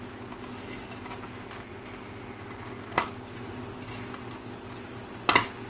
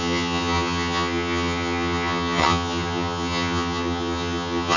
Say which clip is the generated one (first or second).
second